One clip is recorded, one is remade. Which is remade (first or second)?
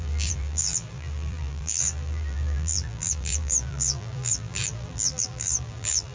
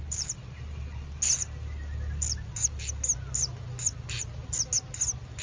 first